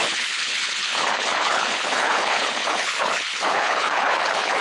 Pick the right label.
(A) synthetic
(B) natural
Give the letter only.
A